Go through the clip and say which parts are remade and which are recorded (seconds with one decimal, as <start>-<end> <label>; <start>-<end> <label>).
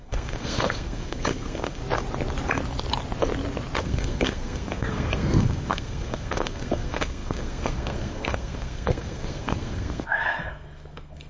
0.0-1.8 remade; 1.8-3.8 recorded; 3.8-11.3 remade